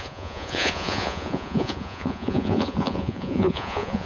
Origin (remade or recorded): remade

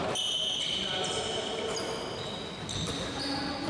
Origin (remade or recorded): recorded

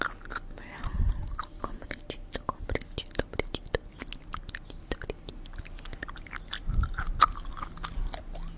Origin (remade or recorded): recorded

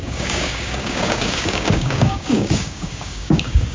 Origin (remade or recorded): remade